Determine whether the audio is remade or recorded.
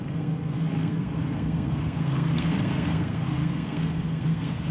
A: remade